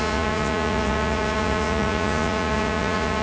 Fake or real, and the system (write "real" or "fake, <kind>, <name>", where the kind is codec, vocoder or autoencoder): fake, vocoder, Vocos